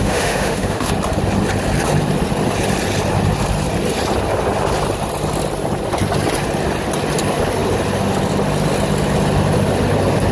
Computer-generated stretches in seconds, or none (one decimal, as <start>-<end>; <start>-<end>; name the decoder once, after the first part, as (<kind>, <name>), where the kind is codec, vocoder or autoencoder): 0.0-0.9 (autoencoder, DAC-VAE)

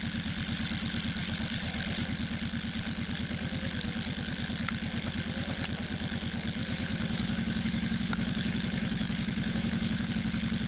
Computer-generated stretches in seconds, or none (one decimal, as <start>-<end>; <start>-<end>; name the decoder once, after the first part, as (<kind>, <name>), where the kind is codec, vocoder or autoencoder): 6.6-10.1 (autoencoder, DAC-VAE)

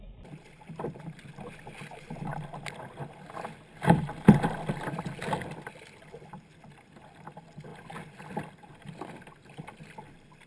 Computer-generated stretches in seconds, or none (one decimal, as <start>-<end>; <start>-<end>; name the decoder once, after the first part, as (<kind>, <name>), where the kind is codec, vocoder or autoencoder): none

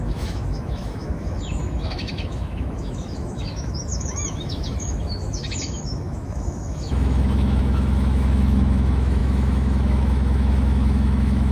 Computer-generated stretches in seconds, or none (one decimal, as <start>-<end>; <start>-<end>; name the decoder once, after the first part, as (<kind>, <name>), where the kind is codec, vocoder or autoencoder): 0.0-11.5 (autoencoder, DAC-VAE)

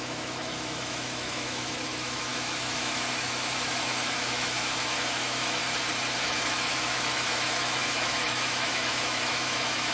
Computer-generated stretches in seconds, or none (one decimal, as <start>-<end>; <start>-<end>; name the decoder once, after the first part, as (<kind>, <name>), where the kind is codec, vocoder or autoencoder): 0.0-5.6 (autoencoder, DAC-VAE); 6.2-9.9

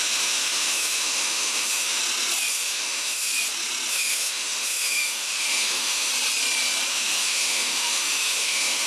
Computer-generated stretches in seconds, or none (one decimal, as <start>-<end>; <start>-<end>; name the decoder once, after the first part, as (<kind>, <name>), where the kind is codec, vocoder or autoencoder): 0.0-2.0 (autoencoder, DAC-VAE); 2.5-3.3; 3.9-6.1; 6.9-8.9

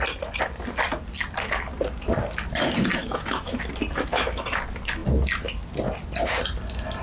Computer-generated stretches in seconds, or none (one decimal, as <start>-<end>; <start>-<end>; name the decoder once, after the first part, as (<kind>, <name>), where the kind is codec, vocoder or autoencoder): 3.0-3.6 (autoencoder, DAC-VAE); 4.1-4.6